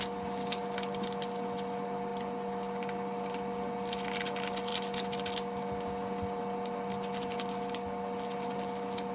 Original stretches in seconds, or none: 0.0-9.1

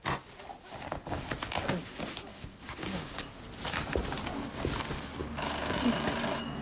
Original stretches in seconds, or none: 0.0-2.3; 3.2-5.2; 5.8-6.6

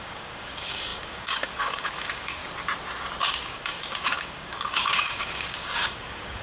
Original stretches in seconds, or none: 2.4-3.2

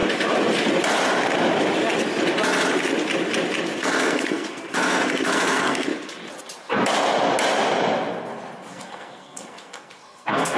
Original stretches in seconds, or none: 0.0-3.8; 5.9-8.7

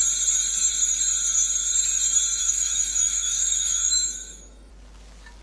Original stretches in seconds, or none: 0.0-2.4; 4.7-5.4

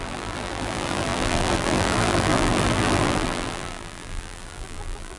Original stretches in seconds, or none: none

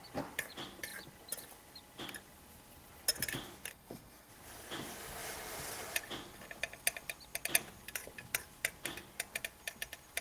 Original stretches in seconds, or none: 0.0-3.7; 4.3-10.2